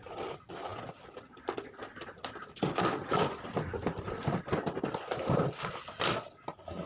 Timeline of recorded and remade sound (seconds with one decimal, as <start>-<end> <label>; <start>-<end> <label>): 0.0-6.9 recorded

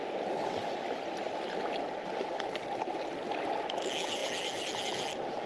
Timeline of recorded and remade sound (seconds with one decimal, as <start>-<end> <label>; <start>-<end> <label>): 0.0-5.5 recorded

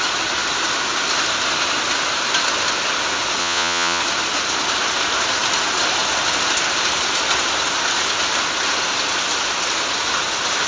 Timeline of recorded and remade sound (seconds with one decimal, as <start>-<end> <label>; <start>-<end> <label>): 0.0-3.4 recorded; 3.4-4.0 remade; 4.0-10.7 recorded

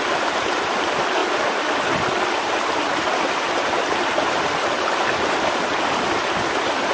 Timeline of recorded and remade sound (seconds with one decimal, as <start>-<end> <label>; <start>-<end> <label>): 0.0-6.9 recorded

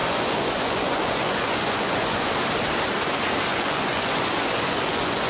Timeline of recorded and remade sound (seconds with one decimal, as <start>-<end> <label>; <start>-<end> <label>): 0.0-2.3 remade; 2.3-3.5 recorded; 3.5-5.3 remade